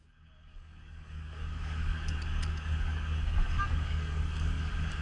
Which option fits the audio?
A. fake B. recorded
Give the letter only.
A